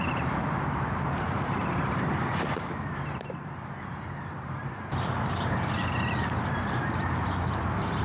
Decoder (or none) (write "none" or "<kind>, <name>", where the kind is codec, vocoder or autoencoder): vocoder, BigVGAN v2